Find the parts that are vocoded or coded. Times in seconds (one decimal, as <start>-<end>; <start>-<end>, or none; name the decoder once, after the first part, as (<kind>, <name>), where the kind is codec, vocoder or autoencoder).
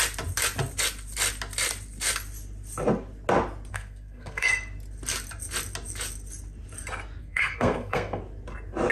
3.7-4.5 (codec, SNAC); 7.2-8.2